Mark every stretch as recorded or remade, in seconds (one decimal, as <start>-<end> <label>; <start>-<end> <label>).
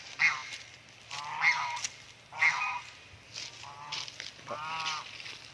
0.0-5.5 recorded